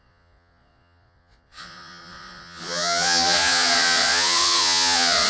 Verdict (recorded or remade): remade